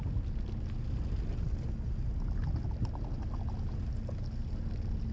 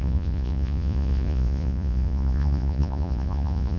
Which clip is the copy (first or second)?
second